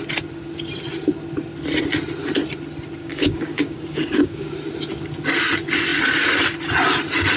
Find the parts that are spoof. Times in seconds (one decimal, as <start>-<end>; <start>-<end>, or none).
3.0-4.5